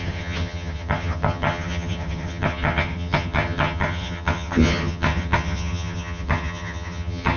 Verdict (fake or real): fake